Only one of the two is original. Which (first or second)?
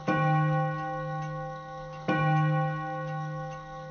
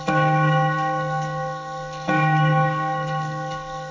first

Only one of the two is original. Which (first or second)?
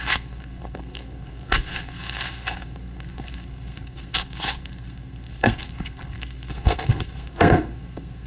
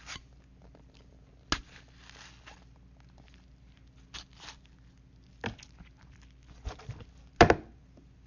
second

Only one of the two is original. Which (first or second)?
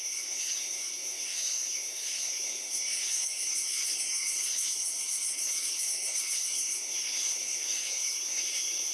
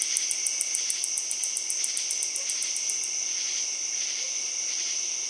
second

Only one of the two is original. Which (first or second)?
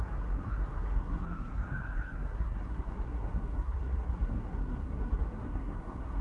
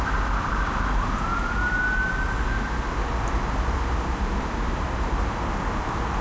second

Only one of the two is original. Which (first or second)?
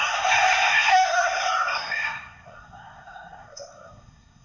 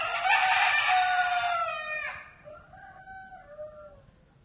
second